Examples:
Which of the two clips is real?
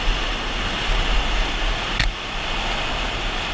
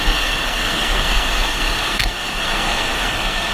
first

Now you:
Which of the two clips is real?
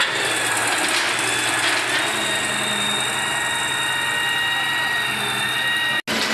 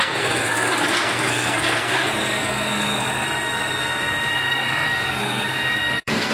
first